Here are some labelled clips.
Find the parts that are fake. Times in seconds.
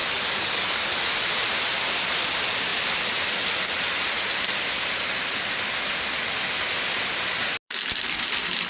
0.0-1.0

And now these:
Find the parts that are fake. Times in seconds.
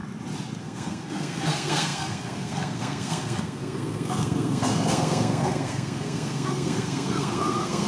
0.6-7.9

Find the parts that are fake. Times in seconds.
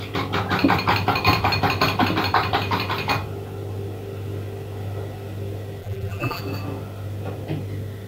5.8-6.4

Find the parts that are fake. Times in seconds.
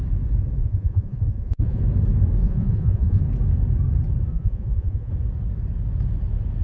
0.6-1.8; 2.4-3.2; 4.3-5.1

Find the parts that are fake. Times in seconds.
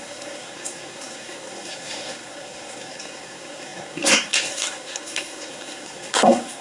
0.0-6.6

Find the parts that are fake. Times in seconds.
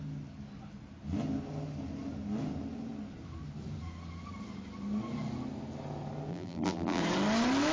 6.3-7.0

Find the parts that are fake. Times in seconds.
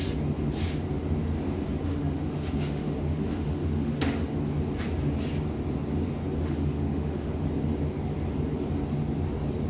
1.9-4.4; 6.4-7.3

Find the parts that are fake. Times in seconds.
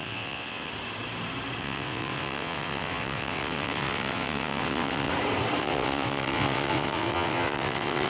0.0-0.7; 1.6-5.1; 5.6-8.1